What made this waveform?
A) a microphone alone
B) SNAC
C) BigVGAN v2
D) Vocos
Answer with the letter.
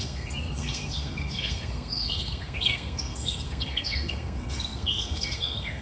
B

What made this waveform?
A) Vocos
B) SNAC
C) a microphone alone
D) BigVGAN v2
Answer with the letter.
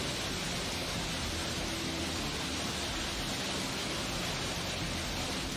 C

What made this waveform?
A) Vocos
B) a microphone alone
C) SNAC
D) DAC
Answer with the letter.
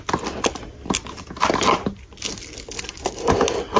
B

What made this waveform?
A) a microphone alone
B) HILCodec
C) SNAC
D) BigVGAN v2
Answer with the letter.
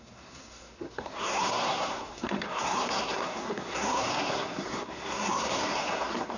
C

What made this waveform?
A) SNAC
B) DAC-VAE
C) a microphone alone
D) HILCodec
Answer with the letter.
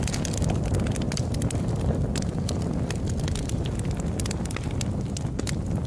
C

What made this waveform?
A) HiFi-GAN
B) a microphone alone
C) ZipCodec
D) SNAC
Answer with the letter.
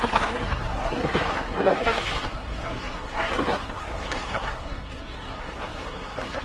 D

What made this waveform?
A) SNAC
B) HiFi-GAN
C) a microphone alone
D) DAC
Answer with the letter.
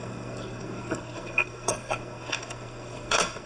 A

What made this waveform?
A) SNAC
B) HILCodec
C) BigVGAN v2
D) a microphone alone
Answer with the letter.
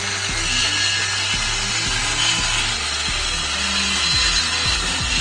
D